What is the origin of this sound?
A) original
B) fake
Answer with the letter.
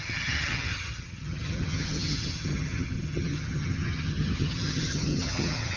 B